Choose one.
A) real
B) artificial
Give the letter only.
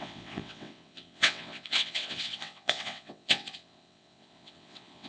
B